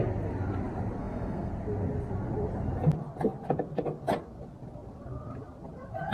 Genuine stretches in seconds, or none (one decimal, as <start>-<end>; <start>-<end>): 0.0-1.0; 1.5-6.1